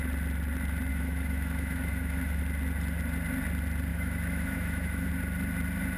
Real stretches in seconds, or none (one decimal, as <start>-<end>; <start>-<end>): 0.0-0.9; 2.4-3.9; 5.1-6.0